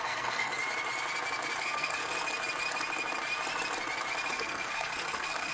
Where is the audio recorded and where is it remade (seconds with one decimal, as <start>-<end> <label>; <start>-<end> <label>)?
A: 0.0-0.5 remade; 0.5-1.6 recorded; 1.6-2.1 remade; 2.1-4.3 recorded; 4.3-5.5 remade